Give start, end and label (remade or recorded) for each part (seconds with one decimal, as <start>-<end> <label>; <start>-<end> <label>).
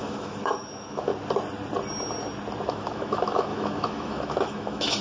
0.0-1.1 remade; 1.1-2.7 recorded; 2.7-5.0 remade